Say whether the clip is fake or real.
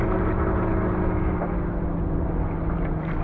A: fake